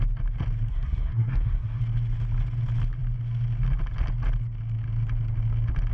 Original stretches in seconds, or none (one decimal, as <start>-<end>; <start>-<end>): 0.0-0.7; 1.8-5.9